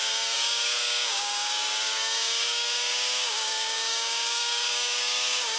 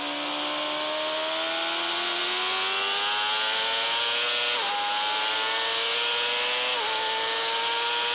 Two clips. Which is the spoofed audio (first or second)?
first